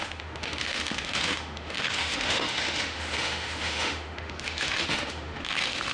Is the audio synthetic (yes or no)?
yes